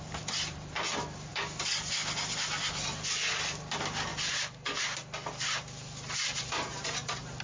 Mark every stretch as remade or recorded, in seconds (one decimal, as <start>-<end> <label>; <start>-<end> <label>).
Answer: 0.0-7.4 recorded